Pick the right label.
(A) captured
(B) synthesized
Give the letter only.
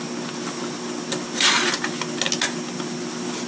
A